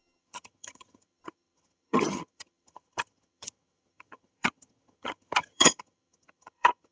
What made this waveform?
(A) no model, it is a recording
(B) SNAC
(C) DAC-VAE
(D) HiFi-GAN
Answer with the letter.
D